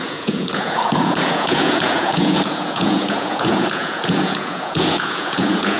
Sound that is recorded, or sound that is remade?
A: remade